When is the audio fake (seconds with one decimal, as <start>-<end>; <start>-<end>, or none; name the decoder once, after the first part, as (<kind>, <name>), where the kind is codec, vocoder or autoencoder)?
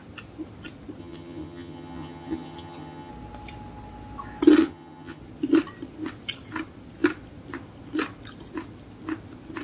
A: 1.0-3.1 (vocoder, HiFi-GAN); 4.6-5.2